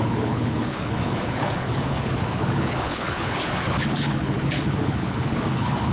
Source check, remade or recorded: remade